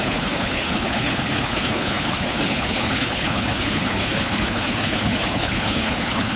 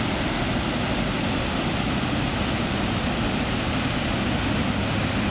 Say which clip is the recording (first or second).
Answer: second